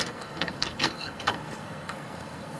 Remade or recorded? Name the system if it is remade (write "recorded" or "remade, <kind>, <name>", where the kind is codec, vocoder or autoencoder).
remade, codec, SNAC